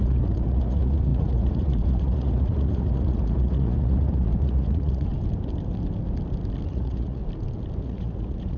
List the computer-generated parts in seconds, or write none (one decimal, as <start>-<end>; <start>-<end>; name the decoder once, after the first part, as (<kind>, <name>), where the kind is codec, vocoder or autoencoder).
0.0-5.1 (vocoder, Vocos); 6.7-7.2; 7.8-8.6